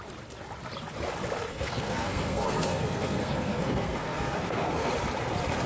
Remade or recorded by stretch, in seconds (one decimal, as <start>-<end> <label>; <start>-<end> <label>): 0.0-1.5 recorded; 1.5-4.9 remade; 4.9-5.7 recorded